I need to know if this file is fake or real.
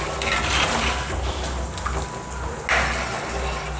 real